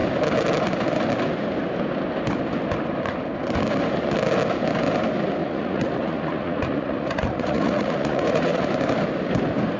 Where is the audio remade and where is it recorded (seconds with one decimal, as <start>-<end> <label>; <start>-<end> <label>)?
0.0-5.4 recorded; 5.4-8.7 remade; 8.7-9.8 recorded

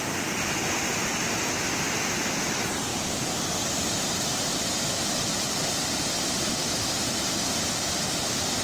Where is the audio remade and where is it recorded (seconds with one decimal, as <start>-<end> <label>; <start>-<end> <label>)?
0.0-2.9 recorded; 2.9-4.5 remade; 4.5-8.6 recorded

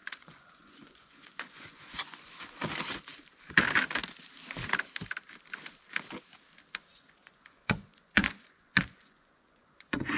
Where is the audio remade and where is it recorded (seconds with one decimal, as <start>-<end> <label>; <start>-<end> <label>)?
0.0-2.4 remade; 2.4-6.9 recorded; 6.9-10.2 remade